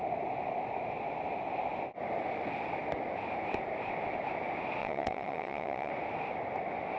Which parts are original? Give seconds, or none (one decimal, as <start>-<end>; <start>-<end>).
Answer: 0.0-4.8; 5.9-7.0